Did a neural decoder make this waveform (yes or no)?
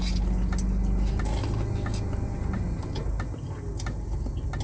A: no